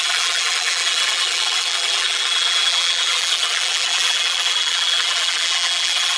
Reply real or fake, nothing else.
fake